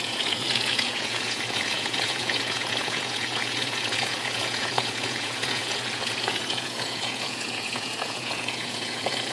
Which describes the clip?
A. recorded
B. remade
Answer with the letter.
B